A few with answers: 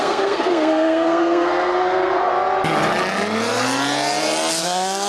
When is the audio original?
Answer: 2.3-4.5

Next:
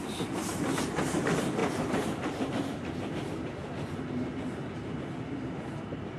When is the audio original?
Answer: 0.0-6.2

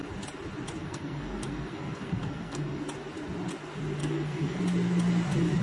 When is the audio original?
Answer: 0.0-0.8; 2.8-4.0; 4.6-5.6